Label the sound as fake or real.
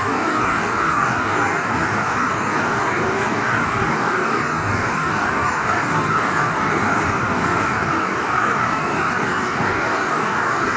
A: fake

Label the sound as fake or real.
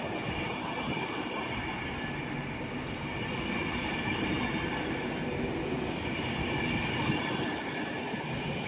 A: real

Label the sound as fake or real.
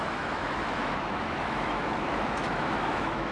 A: fake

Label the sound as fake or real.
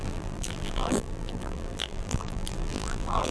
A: fake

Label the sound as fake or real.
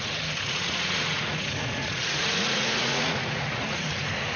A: fake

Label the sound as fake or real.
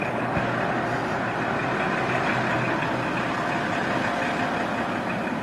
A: real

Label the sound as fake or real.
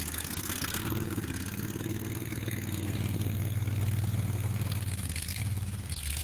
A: fake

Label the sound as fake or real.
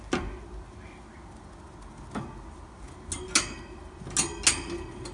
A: real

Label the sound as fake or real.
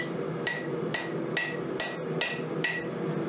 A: real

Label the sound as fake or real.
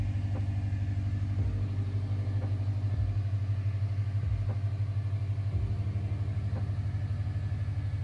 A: real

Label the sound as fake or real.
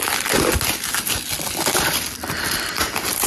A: real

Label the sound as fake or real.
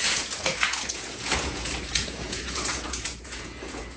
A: fake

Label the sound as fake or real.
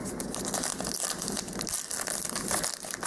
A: real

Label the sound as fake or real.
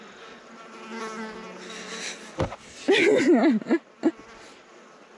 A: real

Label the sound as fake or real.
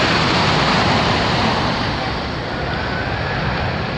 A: real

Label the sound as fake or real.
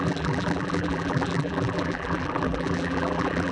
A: fake